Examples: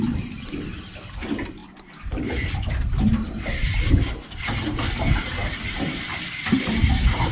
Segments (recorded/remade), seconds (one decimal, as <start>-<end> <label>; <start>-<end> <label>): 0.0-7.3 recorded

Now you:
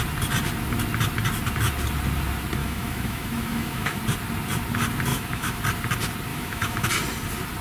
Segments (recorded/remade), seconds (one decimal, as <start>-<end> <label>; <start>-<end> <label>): 0.0-2.6 recorded; 2.6-4.0 remade; 4.0-5.1 recorded; 5.1-5.6 remade; 5.6-6.3 recorded; 6.3-6.9 remade; 6.9-7.6 recorded

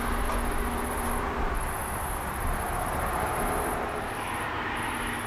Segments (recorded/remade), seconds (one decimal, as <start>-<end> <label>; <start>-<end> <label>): 0.0-5.3 recorded

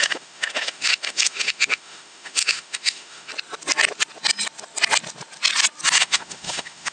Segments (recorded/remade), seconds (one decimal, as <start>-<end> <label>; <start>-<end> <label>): 0.0-3.3 remade; 3.3-5.9 recorded; 5.9-6.9 remade

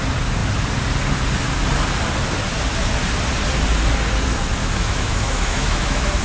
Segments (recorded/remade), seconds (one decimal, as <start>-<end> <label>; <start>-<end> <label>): 0.0-4.6 recorded; 4.6-6.2 remade